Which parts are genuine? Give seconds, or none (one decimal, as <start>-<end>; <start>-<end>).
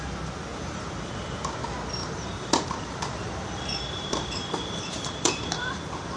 0.0-0.5; 1.6-2.0; 5.7-6.2